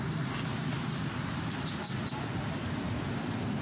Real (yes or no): yes